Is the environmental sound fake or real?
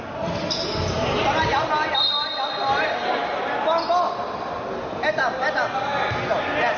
real